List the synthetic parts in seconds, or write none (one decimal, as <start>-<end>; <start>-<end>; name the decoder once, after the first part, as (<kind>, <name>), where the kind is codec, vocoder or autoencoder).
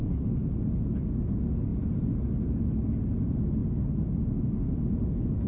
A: none